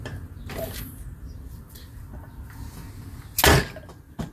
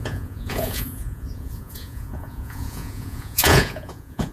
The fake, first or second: second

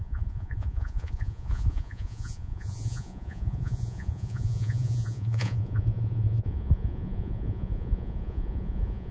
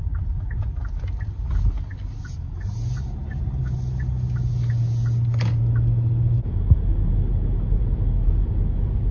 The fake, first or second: first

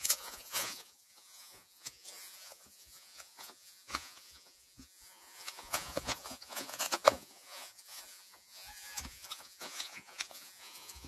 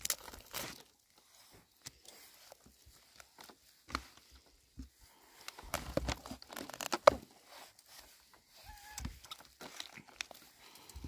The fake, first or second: first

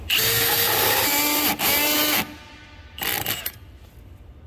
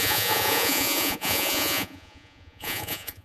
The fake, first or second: second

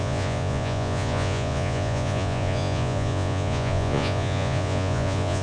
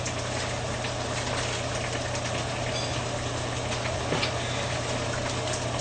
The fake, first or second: first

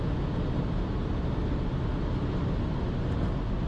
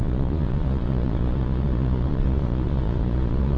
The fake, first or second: second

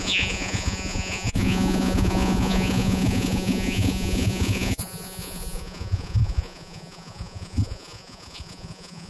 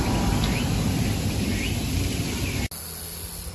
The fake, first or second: first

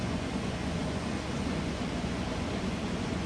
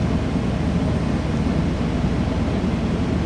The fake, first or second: first